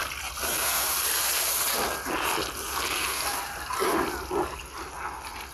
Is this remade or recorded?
recorded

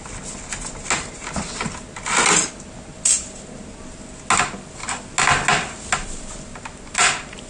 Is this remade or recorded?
recorded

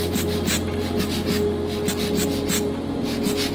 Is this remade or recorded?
recorded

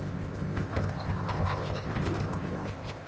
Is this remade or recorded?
remade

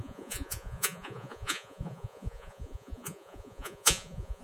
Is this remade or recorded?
remade